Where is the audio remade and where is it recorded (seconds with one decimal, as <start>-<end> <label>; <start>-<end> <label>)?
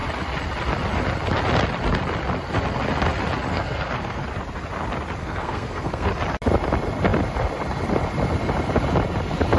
0.0-3.5 recorded; 3.5-4.2 remade; 4.2-5.2 recorded; 5.2-6.1 remade; 6.1-9.6 recorded